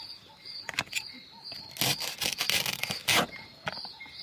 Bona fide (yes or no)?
yes